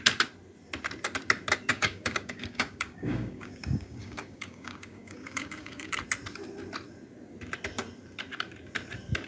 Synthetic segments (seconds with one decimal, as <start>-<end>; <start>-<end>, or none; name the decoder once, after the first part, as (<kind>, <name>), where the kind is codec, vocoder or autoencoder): 1.7-5.9 (codec, DAC)